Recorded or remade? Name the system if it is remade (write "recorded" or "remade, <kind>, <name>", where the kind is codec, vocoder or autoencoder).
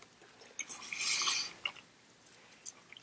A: recorded